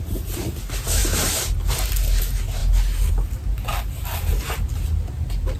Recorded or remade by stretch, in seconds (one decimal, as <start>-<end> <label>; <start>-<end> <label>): 0.0-5.6 recorded